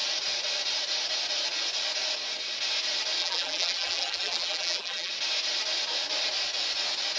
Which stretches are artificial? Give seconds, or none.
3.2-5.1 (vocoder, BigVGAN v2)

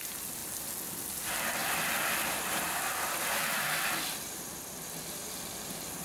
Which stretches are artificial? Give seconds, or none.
1.6-5.2 (vocoder, BigVGAN v2)

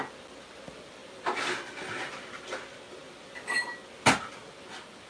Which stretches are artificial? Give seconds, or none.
none

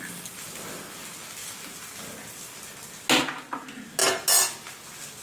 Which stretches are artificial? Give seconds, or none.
none

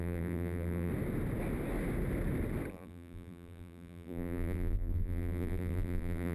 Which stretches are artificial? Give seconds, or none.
0.0-0.9 (vocoder, BigVGAN v2); 2.7-6.3

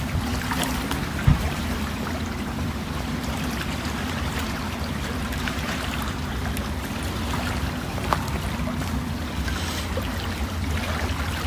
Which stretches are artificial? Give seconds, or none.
1.3-6.3 (vocoder, BigVGAN v2)

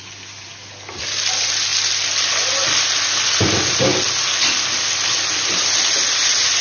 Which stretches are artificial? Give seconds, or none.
none